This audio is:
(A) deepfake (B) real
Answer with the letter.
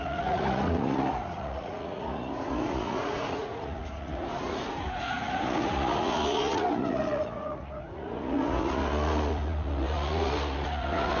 A